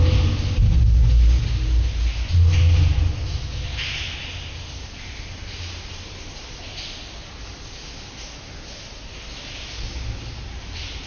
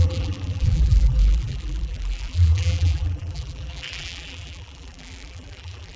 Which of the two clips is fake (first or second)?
second